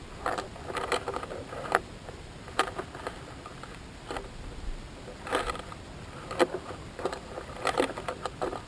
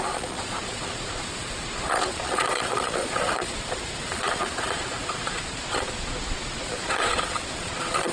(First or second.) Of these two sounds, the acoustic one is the first